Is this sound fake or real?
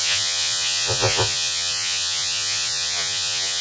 fake